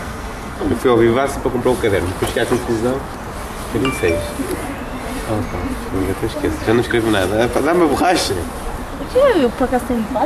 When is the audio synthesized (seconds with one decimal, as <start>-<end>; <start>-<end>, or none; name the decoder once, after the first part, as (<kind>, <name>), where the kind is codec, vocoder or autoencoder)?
0.0-0.8 (codec, SNAC)